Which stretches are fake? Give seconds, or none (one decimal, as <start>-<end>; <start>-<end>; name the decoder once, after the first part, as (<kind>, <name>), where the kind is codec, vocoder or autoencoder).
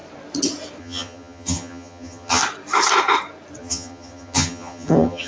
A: 0.8-2.4 (vocoder, HiFi-GAN); 3.6-5.3